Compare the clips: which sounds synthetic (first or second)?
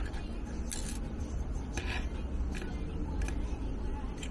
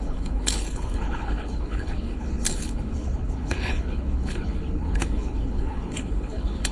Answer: second